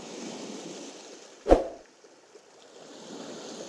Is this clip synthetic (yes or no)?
no